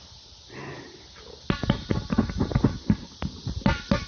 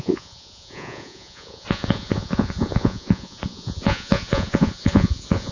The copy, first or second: second